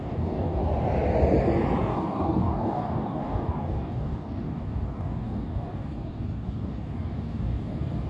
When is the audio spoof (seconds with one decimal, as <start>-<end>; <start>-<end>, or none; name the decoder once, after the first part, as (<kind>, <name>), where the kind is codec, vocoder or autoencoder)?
0.0-0.6 (codec, DAC); 1.8-8.1